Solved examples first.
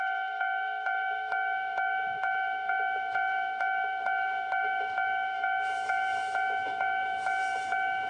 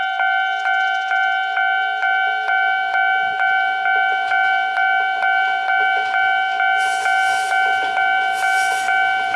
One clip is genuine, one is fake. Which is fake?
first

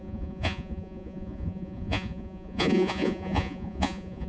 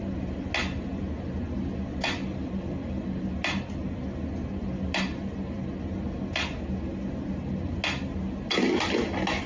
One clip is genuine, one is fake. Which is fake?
first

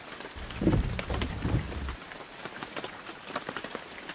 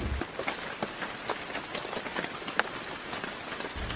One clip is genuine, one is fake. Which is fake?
first